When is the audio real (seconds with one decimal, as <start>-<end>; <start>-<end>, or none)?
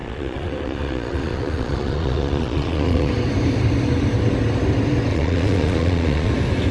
3.1-5.1; 6.3-6.7